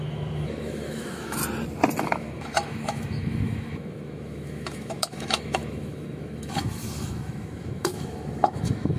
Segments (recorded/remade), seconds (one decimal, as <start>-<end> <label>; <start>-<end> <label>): 0.0-1.4 remade; 1.4-2.0 recorded; 2.0-9.0 remade